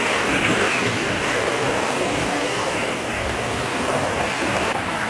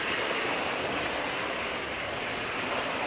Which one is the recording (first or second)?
second